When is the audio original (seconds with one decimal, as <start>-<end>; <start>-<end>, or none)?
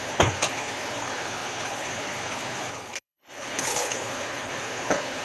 none